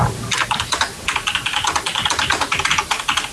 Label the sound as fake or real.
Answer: real